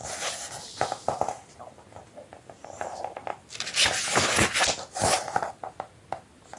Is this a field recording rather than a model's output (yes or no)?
yes